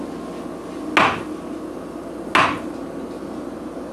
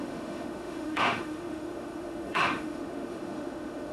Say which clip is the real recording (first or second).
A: first